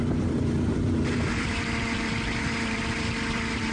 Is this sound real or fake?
fake